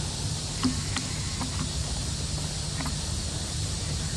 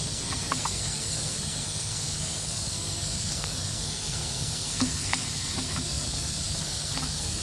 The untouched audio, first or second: first